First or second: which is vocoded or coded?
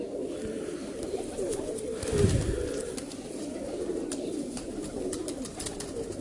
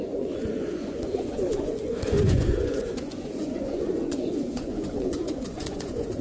second